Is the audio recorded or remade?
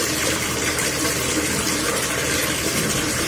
remade